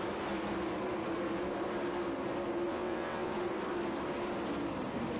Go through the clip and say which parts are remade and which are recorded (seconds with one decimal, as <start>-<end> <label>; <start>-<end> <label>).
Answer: 0.0-2.7 recorded; 2.7-3.3 remade; 3.3-5.2 recorded